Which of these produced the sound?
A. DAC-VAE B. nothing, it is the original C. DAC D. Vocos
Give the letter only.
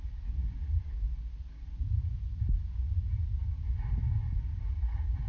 B